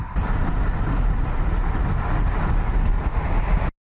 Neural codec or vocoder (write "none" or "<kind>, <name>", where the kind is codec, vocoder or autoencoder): none